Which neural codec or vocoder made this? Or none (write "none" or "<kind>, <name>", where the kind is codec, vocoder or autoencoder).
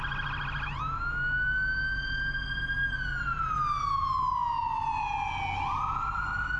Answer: none